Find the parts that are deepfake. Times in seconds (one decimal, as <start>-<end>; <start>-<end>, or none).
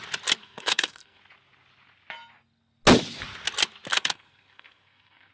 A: 0.4-1.2; 3.9-5.3